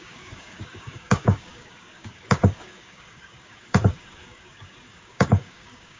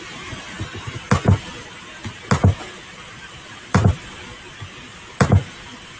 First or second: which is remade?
first